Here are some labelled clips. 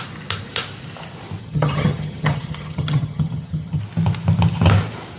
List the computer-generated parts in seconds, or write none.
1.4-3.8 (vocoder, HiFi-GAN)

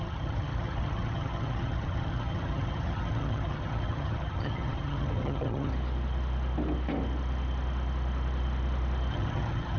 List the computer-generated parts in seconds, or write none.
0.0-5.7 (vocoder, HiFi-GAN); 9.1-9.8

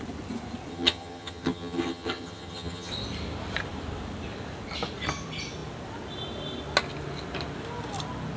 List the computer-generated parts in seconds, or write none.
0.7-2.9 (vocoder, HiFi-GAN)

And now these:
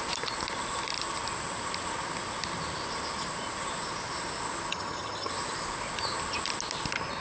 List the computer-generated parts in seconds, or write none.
4.7-5.3 (vocoder, HiFi-GAN)

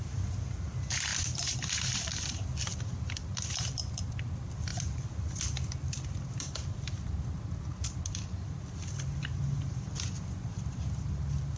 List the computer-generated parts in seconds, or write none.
none